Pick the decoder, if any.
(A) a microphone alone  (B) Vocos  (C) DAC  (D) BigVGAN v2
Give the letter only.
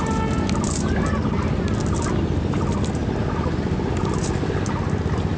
A